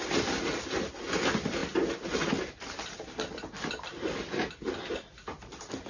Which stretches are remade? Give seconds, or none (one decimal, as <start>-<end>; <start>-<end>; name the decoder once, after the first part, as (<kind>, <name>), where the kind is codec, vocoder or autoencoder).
none